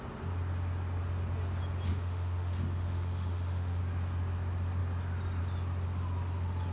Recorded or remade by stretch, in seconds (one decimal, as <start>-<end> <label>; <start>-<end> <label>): 0.0-1.9 recorded; 1.9-3.8 remade; 3.8-6.7 recorded

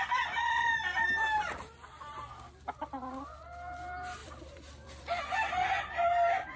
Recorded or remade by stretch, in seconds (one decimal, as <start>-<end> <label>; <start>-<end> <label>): 0.0-0.5 recorded; 0.5-1.1 remade; 1.1-4.2 recorded; 4.2-5.2 remade; 5.2-6.6 recorded

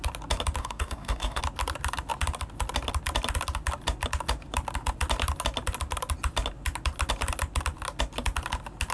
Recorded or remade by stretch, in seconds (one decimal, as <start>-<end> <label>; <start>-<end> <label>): 0.0-0.6 recorded; 0.6-1.4 remade; 1.4-8.9 recorded

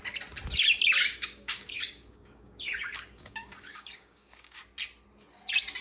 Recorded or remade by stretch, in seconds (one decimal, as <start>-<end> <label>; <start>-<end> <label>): 0.0-1.1 recorded; 1.1-4.6 remade; 4.6-5.8 recorded

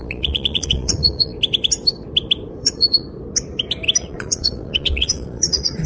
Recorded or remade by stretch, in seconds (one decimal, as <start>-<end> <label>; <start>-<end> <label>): 0.0-1.3 remade; 1.3-2.5 recorded; 2.5-3.0 remade; 3.0-4.0 recorded; 4.0-5.9 remade

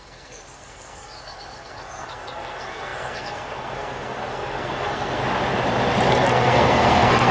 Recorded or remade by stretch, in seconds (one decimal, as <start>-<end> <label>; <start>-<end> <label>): 0.0-5.2 remade; 5.2-6.1 recorded; 6.1-7.3 remade

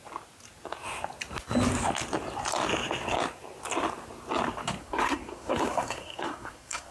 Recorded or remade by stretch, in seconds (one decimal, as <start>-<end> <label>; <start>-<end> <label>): 0.0-4.8 recorded; 4.8-6.9 remade